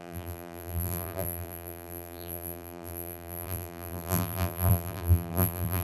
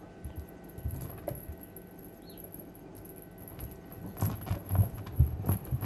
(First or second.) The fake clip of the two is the first